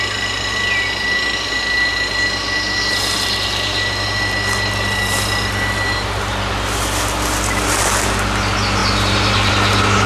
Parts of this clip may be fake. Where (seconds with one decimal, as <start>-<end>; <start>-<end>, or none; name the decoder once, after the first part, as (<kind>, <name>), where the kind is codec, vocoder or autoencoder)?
none